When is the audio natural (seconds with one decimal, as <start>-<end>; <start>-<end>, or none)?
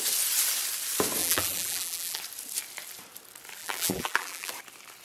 0.0-1.2; 2.2-3.6; 4.5-5.0